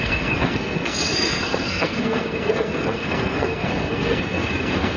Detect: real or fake fake